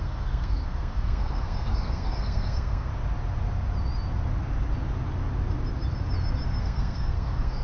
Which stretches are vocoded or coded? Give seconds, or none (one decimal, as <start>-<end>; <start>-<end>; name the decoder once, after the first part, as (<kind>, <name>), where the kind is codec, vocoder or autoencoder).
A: 0.0-2.9 (codec, SNAC); 6.6-7.6